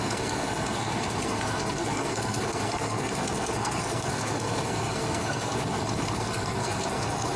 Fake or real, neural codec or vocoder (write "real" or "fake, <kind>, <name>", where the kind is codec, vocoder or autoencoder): fake, codec, SNAC